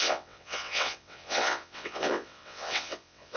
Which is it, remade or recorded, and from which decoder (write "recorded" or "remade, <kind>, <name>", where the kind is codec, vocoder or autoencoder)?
remade, vocoder, WaveNeXt